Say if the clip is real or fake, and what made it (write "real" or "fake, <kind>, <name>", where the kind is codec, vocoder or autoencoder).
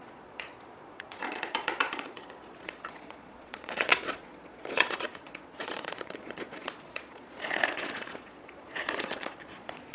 fake, vocoder, Vocos